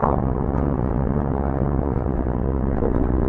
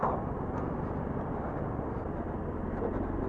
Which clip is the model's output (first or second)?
first